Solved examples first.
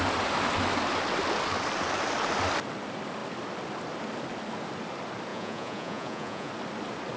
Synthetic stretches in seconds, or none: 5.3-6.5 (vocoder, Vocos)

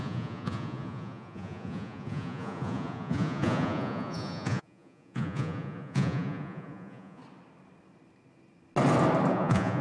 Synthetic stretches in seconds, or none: 0.0-7.2 (vocoder, Vocos); 9.3-9.8

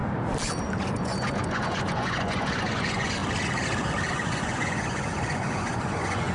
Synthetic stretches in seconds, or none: 0.8-3.2 (vocoder, Vocos); 4.1-6.3

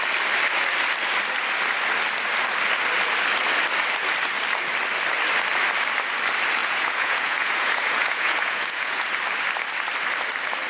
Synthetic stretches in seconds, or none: 6.6-9.1 (vocoder, Vocos)

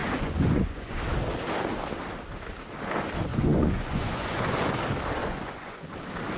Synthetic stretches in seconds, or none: 0.0-1.0 (vocoder, Vocos); 3.3-4.7; 5.2-5.9

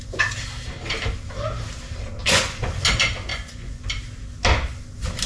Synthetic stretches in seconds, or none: 2.2-2.8 (vocoder, Vocos); 3.3-3.8